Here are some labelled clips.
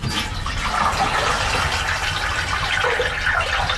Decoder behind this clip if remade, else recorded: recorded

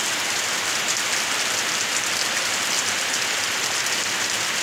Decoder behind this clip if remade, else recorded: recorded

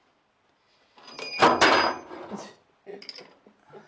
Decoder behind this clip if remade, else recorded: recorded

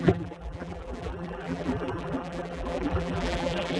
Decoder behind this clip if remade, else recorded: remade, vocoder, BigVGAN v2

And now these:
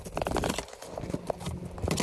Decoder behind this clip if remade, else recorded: recorded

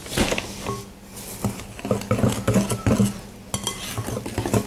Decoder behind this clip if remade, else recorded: recorded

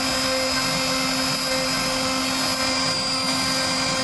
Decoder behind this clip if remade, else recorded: recorded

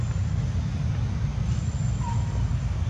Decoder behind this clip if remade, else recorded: recorded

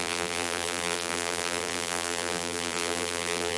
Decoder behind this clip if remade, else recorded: remade, vocoder, BigVGAN v2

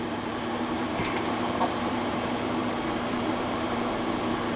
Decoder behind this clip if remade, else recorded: remade, vocoder, BigVGAN v2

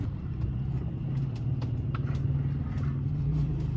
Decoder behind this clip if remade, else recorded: recorded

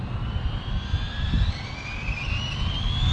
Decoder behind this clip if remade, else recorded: recorded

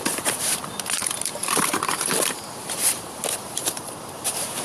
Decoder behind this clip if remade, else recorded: remade, vocoder, BigVGAN v2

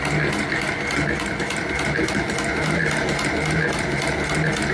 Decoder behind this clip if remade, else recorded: recorded